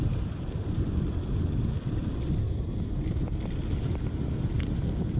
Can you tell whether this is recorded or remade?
recorded